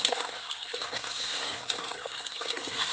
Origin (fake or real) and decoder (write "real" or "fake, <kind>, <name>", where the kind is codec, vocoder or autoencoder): fake, codec, SNAC